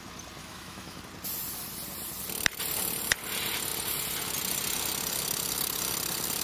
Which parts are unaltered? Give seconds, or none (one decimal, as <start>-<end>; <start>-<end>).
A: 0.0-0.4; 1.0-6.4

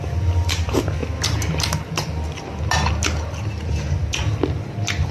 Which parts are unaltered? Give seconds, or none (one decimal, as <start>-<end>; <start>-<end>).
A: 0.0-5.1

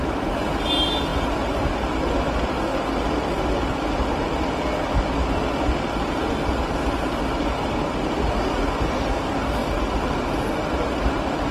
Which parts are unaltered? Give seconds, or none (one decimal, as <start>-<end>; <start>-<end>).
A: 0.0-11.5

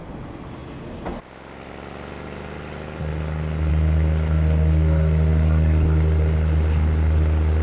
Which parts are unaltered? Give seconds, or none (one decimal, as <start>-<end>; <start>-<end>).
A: 0.0-7.6

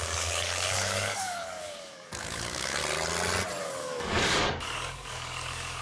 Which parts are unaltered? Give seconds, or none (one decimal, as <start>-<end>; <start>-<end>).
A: 2.8-3.6

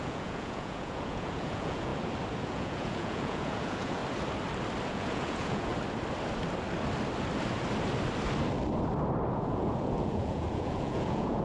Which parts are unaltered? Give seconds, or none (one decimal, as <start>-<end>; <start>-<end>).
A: 1.9-2.4; 4.0-4.9; 5.7-9.3